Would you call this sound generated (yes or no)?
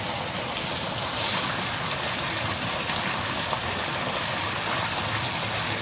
no